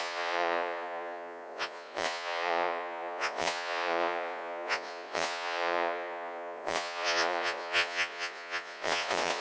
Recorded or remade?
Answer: remade